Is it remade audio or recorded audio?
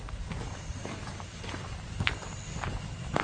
recorded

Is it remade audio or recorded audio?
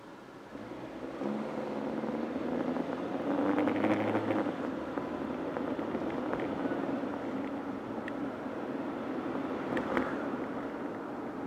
recorded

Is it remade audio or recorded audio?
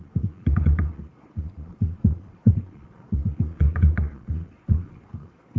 remade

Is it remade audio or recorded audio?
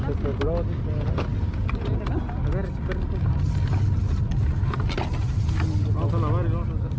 recorded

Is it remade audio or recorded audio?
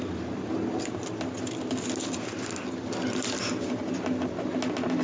recorded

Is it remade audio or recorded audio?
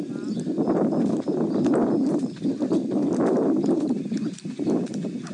recorded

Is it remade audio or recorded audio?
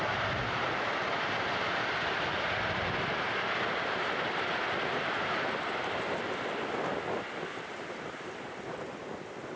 recorded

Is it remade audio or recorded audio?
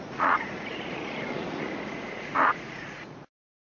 remade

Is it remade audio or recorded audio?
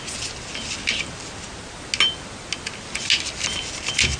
recorded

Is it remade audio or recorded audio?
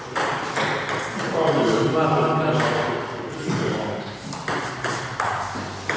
recorded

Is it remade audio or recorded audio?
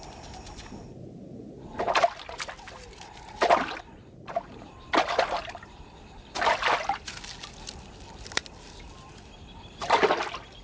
recorded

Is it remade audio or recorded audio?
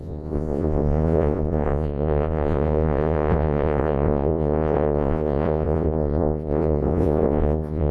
remade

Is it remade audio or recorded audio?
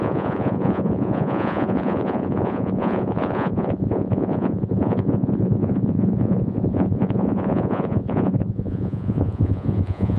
remade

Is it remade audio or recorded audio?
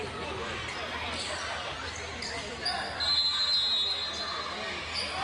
recorded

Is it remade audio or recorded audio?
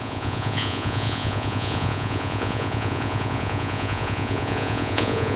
remade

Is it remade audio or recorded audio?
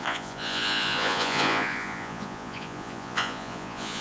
remade